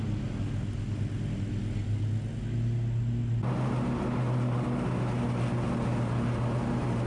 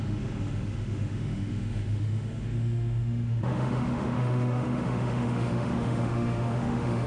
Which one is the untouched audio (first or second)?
first